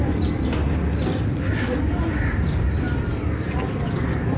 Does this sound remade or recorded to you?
recorded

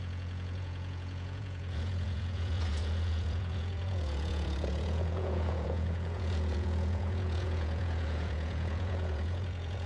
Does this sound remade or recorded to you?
remade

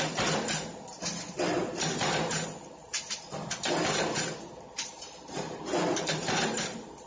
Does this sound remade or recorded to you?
recorded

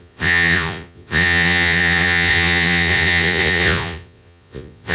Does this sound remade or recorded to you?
remade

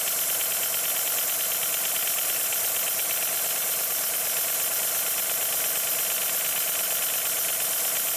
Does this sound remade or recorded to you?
recorded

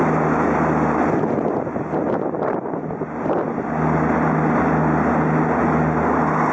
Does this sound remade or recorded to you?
recorded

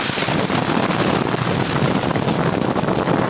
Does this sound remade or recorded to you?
recorded